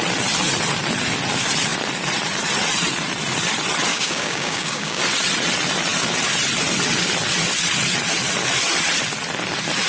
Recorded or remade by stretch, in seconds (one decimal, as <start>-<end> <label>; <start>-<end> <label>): 0.0-3.9 recorded; 3.9-5.0 remade; 5.0-9.9 recorded